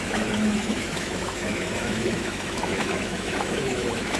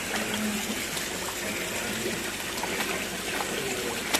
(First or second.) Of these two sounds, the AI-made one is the first